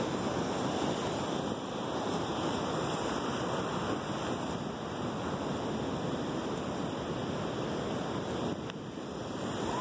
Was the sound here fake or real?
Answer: real